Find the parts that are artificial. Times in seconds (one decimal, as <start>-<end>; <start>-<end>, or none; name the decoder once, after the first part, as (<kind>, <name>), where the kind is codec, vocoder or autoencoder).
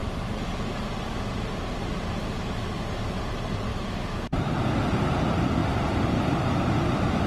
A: 3.7-4.2 (autoencoder, DAC-VAE)